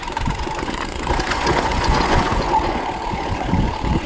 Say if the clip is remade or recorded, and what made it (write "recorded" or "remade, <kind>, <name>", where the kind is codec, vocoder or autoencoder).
remade, vocoder, Vocos